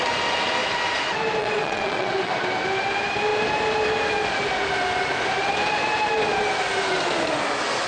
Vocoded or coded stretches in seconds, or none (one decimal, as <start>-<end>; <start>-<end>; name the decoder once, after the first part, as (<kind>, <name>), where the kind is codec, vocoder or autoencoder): 1.4-2.3 (vocoder, WaveNeXt)